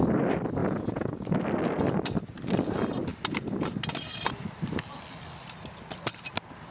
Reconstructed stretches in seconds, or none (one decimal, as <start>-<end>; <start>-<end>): 0.6-1.4